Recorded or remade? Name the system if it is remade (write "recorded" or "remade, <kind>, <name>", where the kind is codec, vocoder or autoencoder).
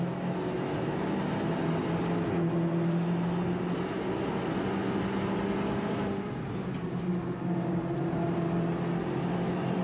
recorded